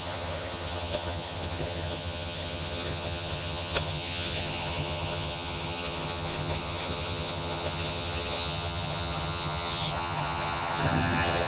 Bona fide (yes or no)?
no